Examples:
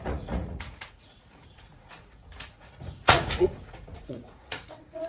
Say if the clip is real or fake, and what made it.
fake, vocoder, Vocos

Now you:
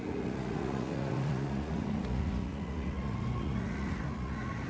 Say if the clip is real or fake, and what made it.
fake, vocoder, Vocos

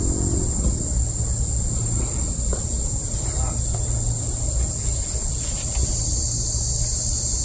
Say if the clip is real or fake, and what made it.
real